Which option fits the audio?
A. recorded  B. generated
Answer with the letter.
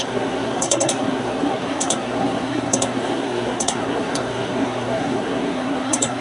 B